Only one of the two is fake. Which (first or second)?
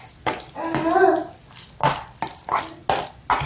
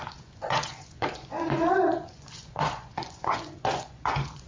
second